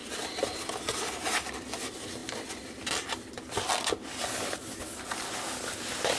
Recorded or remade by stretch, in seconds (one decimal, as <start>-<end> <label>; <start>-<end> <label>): 0.0-6.2 recorded